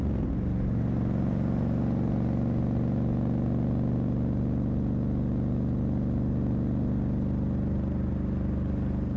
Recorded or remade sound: recorded